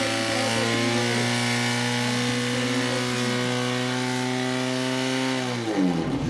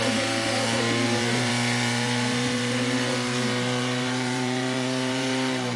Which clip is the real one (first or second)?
first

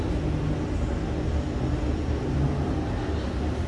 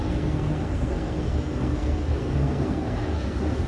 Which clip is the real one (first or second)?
first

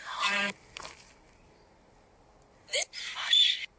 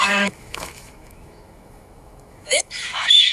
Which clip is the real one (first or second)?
first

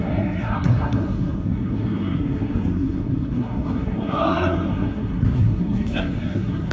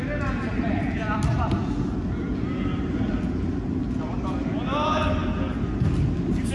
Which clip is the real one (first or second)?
second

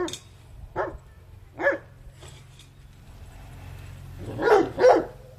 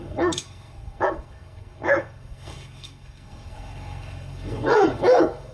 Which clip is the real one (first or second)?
first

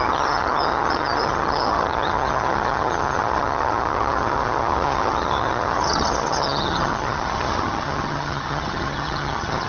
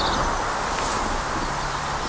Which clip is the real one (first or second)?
second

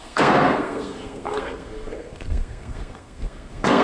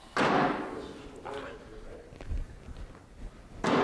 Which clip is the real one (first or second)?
second